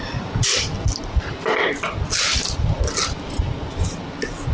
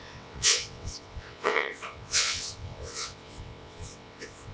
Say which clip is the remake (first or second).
second